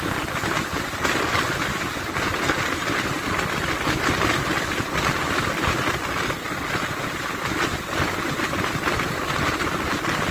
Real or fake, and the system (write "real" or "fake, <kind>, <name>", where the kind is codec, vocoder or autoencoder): real